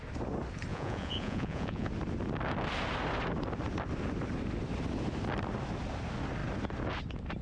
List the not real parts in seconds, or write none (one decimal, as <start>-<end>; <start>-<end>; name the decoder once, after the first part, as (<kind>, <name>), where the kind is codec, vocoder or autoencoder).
0.7-1.9 (vocoder, Vocos)